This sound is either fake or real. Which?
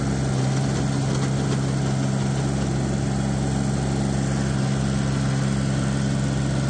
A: real